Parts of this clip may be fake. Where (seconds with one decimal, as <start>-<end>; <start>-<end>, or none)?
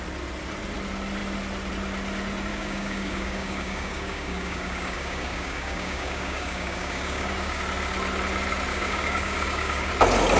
2.5-7.6; 8.7-9.9